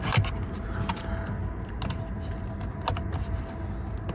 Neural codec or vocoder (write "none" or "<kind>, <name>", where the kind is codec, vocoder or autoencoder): none